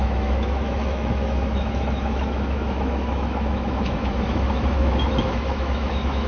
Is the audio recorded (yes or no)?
no